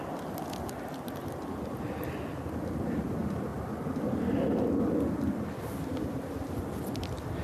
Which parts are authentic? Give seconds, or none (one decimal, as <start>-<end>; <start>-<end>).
0.0-7.4